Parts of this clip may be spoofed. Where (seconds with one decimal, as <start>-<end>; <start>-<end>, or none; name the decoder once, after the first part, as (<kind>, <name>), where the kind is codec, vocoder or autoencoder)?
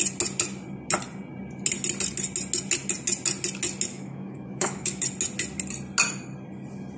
3.9-5.0 (autoencoder, DAC-VAE)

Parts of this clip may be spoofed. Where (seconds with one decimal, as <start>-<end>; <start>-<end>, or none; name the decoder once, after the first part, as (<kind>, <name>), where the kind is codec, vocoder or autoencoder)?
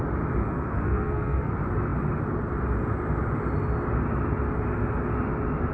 0.4-1.5 (codec, SNAC)